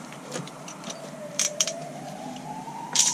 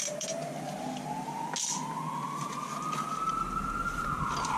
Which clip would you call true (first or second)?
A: second